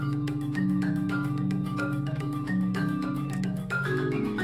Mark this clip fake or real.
fake